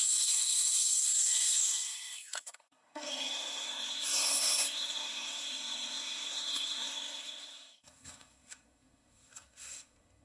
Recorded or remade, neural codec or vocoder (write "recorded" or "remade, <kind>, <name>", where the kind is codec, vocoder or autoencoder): remade, codec, SNAC